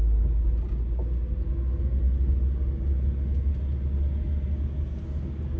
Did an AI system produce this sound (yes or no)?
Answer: no